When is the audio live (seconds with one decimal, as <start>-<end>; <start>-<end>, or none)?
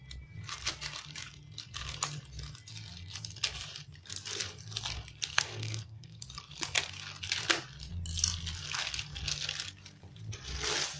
0.0-5.3; 6.2-11.0